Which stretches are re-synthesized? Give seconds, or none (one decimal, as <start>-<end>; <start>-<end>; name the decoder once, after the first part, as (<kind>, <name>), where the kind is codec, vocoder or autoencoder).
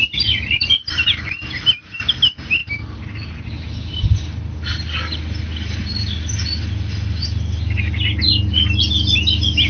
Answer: none